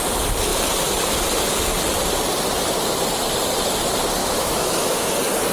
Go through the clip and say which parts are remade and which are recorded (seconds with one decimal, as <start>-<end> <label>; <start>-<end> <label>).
0.0-4.2 recorded; 4.2-5.1 remade; 5.1-5.5 recorded